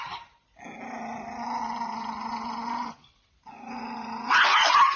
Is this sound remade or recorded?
recorded